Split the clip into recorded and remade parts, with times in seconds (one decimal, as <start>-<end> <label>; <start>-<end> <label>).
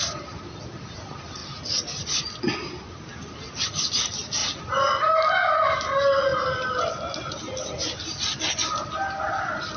0.0-9.8 recorded